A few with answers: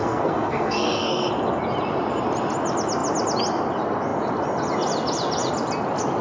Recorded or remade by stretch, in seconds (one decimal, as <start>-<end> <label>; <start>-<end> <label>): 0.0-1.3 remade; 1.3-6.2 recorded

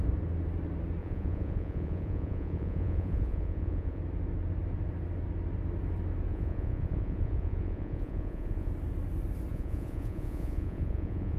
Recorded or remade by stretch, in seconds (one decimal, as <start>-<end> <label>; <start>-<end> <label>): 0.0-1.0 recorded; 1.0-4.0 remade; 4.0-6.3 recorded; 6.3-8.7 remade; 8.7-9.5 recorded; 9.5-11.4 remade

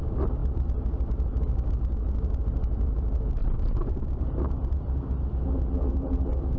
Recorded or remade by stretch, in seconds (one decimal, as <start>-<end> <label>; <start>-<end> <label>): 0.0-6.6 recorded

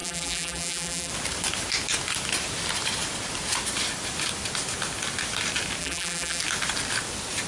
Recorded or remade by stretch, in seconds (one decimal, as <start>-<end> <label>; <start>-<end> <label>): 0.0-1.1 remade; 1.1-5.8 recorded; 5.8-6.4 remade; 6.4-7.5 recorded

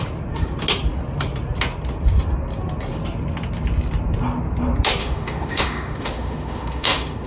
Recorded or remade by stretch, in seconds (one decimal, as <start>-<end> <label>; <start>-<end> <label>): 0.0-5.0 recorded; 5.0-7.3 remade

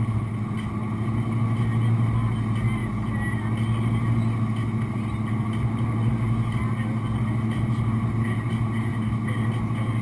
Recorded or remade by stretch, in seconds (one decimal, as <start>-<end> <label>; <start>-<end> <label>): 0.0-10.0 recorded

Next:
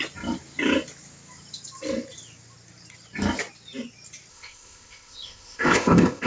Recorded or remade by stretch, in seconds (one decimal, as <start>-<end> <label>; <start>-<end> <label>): 0.0-4.3 recorded; 4.3-6.3 remade

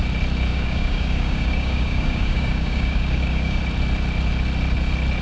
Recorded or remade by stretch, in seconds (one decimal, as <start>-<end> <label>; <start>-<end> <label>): 0.0-0.5 recorded; 0.5-3.6 remade; 3.6-5.2 recorded